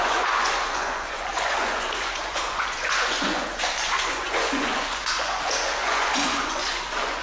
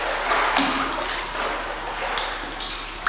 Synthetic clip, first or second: first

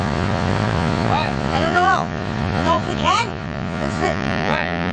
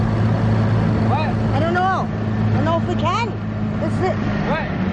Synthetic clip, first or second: first